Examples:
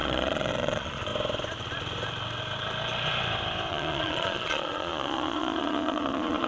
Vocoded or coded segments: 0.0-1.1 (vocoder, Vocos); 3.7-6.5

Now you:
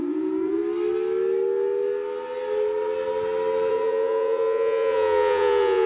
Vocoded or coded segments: 0.0-0.6 (vocoder, Vocos); 3.7-5.9

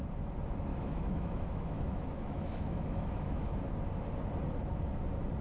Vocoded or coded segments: 0.7-3.6 (autoencoder, DAC-VAE)